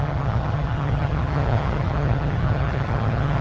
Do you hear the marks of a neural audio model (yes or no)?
yes